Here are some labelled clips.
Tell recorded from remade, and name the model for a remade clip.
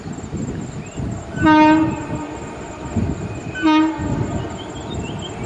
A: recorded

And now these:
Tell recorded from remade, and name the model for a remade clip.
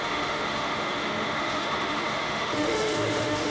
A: remade, autoencoder, DAC-VAE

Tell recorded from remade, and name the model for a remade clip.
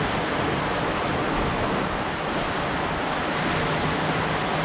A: recorded